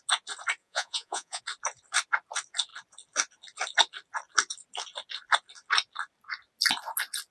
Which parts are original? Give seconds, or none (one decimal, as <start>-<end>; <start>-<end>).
0.0-0.6; 1.4-7.3